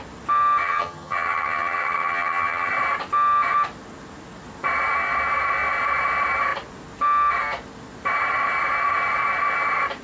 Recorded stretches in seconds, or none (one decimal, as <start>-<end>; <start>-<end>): 0.0-0.6; 2.7-10.0